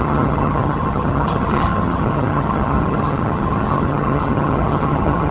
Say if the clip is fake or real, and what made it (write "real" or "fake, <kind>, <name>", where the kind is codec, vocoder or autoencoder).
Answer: fake, vocoder, HiFi-GAN